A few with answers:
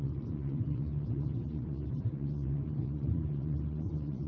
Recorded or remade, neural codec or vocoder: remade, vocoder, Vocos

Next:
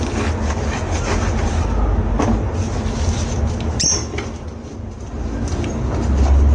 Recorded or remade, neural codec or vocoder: recorded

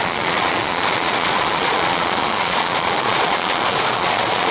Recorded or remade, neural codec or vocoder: remade, vocoder, Vocos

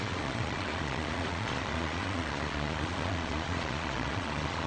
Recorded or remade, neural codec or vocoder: remade, vocoder, Vocos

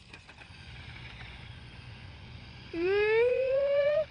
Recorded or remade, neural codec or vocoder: remade, vocoder, Vocos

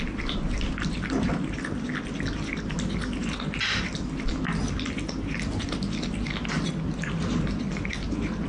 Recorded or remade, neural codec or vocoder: recorded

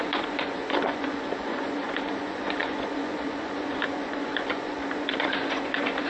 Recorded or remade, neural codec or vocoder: remade, vocoder, Vocos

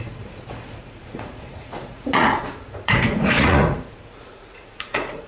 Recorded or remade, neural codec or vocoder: remade, vocoder, Vocos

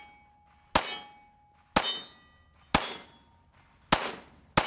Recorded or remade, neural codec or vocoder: recorded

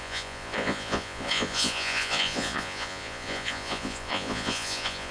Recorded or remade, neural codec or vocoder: remade, vocoder, Vocos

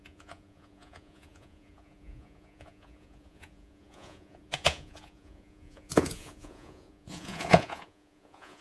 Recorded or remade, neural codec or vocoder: remade, vocoder, Vocos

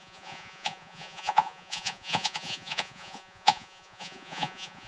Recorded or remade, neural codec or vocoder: remade, vocoder, Vocos